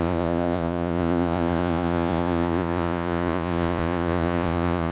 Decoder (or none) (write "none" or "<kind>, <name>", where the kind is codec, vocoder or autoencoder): vocoder, Vocos